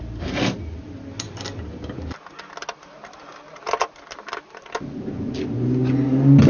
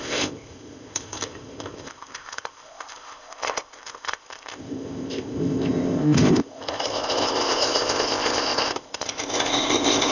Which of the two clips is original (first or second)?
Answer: first